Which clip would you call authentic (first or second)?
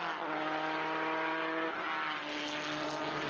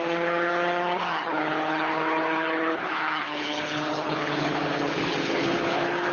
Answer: first